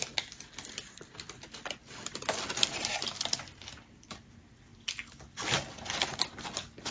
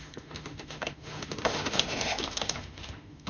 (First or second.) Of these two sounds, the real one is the first